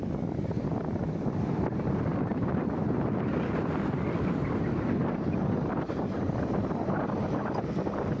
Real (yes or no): no